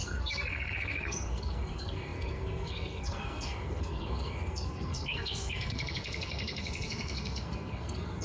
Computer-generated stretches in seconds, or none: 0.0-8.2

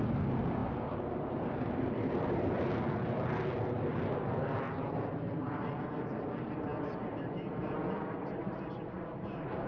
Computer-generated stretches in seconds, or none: none

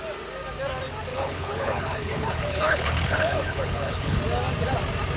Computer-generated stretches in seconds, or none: 1.1-4.2

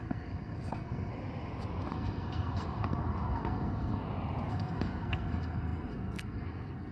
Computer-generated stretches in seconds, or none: 0.0-1.1; 1.9-4.0; 4.5-6.9

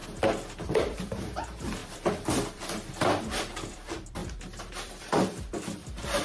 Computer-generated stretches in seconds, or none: 0.6-4.2; 4.7-6.2

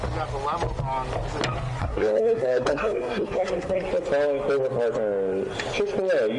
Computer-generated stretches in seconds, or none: 1.8-3.8

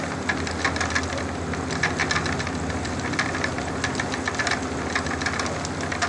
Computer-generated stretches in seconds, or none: none